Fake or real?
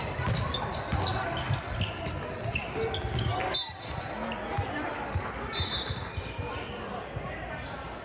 real